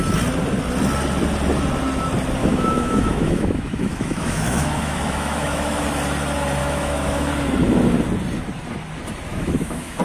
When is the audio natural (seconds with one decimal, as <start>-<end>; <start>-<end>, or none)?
0.0-2.4; 5.8-6.6; 7.3-9.3